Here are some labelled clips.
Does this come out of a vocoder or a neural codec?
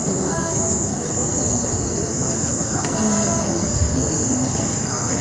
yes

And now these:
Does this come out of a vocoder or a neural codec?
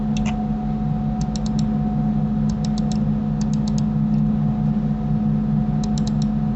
no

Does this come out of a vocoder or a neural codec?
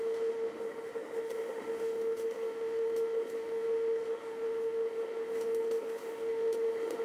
yes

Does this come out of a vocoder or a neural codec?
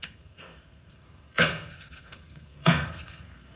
yes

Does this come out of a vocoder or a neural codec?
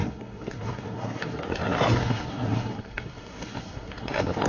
yes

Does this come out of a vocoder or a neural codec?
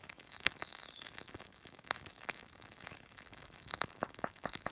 yes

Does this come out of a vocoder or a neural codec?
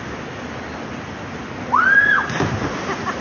no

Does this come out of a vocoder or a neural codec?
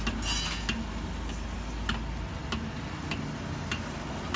no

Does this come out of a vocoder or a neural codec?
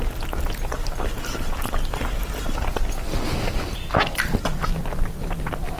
no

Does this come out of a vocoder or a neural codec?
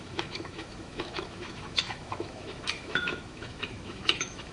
yes